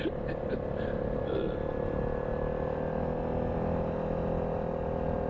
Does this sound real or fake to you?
real